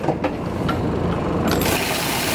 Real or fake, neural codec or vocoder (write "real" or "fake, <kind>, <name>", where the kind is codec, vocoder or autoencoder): real